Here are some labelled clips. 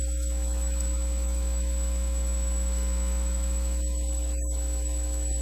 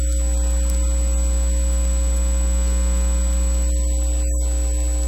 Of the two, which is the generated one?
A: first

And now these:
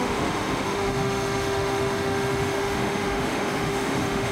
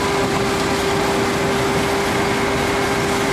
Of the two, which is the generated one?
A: first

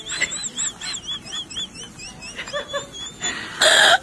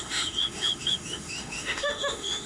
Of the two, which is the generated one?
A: second